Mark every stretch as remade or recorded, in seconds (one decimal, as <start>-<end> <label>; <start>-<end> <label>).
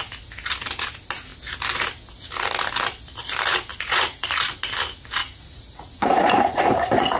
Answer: 0.0-3.7 recorded; 3.7-4.4 remade; 4.4-5.2 recorded; 5.2-7.2 remade